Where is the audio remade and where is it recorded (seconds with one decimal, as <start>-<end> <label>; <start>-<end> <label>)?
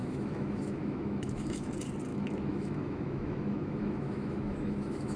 0.0-1.7 remade; 1.7-2.1 recorded; 2.1-5.2 remade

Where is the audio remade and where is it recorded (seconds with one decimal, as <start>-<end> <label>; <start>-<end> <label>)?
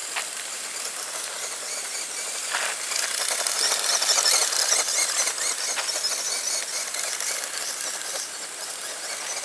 0.0-9.4 recorded